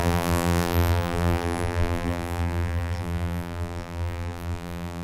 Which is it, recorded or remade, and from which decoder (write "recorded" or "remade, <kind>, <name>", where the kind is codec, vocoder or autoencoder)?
remade, vocoder, BigVGAN v2